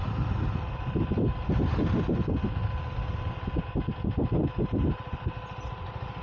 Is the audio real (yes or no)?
yes